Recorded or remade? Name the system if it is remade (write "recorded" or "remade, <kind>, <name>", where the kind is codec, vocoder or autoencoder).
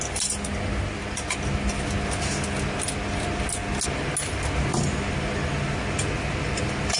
recorded